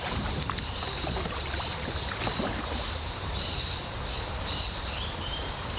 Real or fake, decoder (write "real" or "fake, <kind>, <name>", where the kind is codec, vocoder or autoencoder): fake, vocoder, BigVGAN v2